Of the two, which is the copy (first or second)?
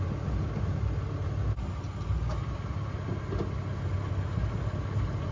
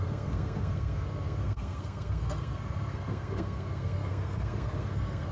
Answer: second